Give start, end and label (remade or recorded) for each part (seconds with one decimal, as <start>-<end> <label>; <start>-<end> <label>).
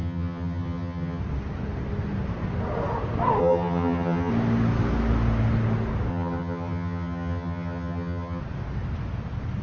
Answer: 0.0-1.2 remade; 1.2-3.4 recorded; 3.4-4.3 remade; 4.3-6.1 recorded; 6.1-8.4 remade; 8.4-9.6 recorded